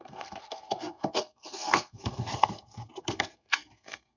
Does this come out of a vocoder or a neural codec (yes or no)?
yes